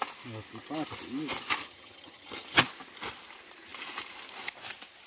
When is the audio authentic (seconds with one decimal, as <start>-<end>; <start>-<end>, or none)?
0.0-1.6; 2.6-5.1